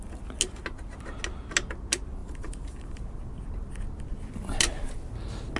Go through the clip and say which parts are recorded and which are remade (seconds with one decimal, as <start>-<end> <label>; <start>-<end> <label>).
0.0-2.2 recorded; 2.2-3.0 remade; 3.0-5.6 recorded